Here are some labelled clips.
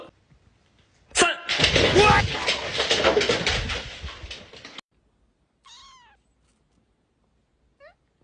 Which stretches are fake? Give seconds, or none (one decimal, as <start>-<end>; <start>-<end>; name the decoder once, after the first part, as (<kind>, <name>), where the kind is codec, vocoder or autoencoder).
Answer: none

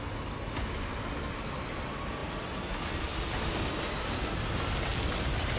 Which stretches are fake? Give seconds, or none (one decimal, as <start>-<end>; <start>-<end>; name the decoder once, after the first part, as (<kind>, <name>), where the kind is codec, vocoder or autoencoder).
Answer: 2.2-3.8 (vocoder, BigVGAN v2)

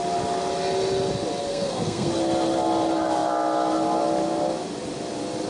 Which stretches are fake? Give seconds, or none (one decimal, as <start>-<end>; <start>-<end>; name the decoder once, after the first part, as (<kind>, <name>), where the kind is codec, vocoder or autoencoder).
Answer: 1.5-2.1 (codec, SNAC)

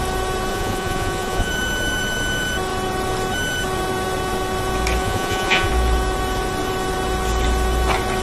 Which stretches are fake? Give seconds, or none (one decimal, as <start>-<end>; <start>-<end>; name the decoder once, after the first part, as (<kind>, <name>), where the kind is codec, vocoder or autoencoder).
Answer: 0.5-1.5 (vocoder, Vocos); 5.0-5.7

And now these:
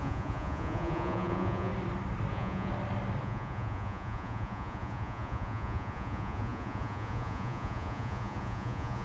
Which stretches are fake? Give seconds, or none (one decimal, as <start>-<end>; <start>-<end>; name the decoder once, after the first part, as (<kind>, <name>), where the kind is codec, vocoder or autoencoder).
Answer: 0.0-1.7 (vocoder, Vocos); 2.3-2.7; 3.2-9.0

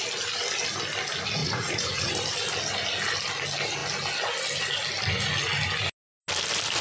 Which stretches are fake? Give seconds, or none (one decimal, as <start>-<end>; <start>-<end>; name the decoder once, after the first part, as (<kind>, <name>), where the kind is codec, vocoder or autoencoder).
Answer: 1.4-2.1 (vocoder, Vocos)

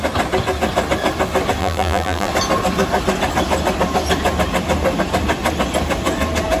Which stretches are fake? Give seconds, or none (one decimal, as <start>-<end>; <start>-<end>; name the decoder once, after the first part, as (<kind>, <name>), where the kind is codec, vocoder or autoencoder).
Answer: 1.6-2.3 (vocoder, BigVGAN v2)

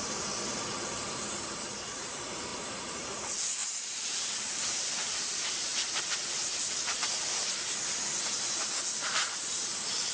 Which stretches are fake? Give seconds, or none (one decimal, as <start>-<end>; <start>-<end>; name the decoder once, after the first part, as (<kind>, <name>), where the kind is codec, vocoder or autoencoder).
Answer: 0.0-10.1 (vocoder, BigVGAN v2)